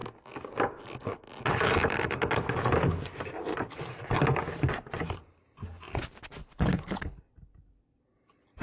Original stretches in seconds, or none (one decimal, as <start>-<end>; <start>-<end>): 0.0-6.4; 7.2-8.6